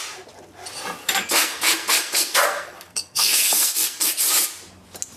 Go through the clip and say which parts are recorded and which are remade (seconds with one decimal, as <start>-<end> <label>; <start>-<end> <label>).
0.0-1.0 recorded; 1.0-4.1 remade; 4.1-5.2 recorded